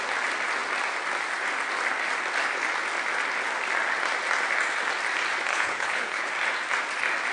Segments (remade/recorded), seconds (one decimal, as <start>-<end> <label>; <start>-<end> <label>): 0.0-5.5 recorded; 5.5-6.3 remade; 6.3-7.3 recorded